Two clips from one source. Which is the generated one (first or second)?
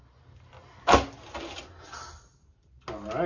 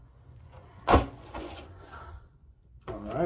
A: second